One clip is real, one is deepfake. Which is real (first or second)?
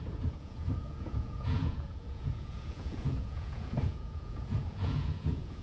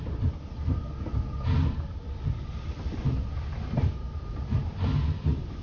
second